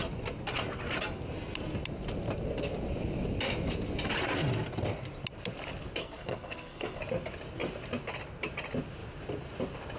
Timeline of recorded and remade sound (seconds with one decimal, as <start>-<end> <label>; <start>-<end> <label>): 0.0-6.0 recorded; 6.0-7.0 remade; 7.0-10.0 recorded